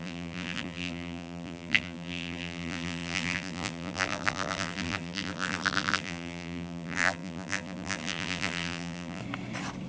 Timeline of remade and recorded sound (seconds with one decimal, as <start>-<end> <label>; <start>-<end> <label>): 0.0-9.2 remade; 9.2-9.9 recorded